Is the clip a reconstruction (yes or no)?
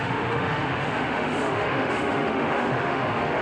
yes